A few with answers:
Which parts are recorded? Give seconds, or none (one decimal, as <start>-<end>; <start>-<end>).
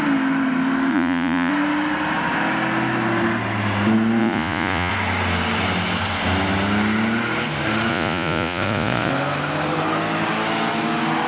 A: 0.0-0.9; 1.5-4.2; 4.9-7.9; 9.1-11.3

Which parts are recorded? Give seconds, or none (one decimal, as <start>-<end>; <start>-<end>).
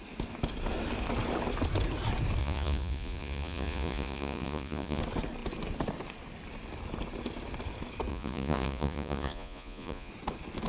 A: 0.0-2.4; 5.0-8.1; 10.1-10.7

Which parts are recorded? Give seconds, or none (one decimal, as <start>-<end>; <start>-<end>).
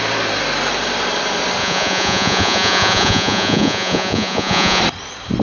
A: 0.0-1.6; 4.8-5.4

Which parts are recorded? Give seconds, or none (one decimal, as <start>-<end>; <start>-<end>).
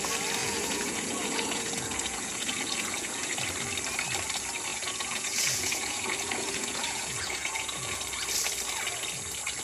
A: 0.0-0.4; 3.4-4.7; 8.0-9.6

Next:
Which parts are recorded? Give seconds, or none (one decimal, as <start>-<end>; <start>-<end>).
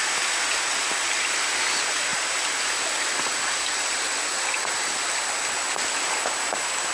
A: 0.0-6.9